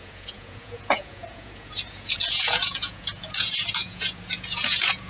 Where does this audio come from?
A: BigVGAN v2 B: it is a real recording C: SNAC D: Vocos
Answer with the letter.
D